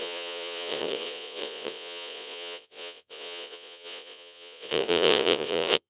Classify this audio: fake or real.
fake